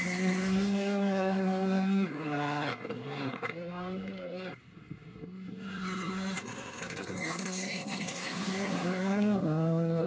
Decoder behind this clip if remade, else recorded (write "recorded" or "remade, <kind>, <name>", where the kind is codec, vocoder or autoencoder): remade, codec, SNAC